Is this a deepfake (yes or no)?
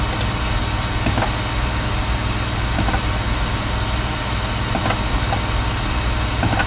no